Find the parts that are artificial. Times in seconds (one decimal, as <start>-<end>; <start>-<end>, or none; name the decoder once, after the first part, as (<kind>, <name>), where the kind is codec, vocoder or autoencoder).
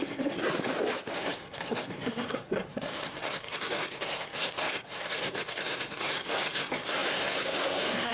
0.0-0.4 (codec, SNAC); 1.1-8.1